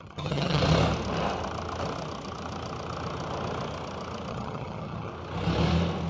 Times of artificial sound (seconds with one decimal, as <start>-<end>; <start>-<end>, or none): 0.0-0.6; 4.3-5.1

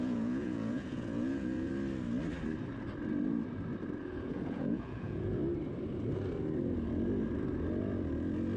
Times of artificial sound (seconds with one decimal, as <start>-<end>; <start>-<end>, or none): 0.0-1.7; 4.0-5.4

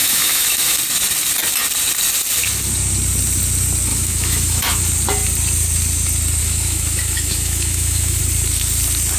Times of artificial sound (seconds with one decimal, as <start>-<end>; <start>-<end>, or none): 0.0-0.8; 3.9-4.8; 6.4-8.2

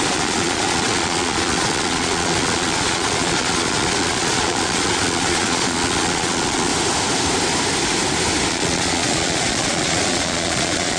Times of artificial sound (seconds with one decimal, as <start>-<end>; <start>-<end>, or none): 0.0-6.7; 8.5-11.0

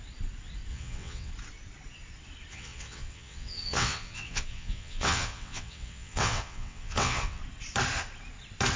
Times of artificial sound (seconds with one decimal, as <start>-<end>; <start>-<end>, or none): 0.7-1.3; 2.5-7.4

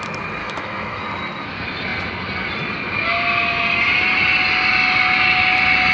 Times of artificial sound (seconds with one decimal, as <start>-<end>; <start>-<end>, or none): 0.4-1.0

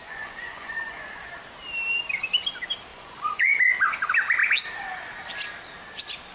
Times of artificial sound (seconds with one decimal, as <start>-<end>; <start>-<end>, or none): 0.0-1.3; 2.9-3.6

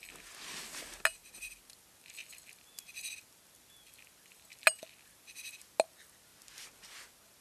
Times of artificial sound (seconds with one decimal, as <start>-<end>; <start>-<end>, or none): 1.2-1.8